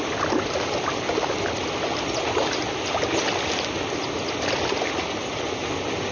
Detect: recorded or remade recorded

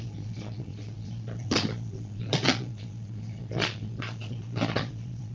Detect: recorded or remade remade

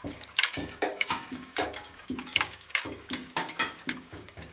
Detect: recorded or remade remade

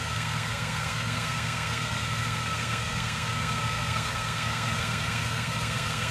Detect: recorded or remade remade